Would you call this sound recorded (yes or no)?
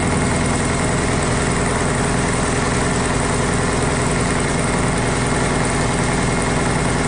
yes